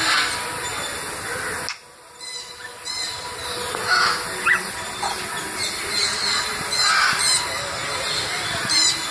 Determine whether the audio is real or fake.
real